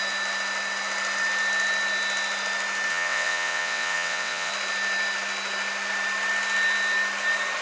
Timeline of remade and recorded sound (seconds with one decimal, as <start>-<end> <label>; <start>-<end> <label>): 0.0-2.9 recorded; 2.9-4.5 remade; 4.5-7.6 recorded